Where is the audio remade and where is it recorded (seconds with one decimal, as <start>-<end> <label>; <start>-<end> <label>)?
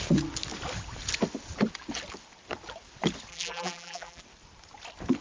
0.0-3.3 recorded; 3.3-4.2 remade; 4.2-5.2 recorded